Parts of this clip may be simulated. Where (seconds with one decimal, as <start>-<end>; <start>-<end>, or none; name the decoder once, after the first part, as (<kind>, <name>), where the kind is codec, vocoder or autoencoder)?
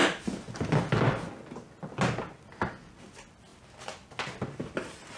none